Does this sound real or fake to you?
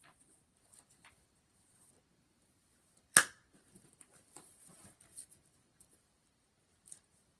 fake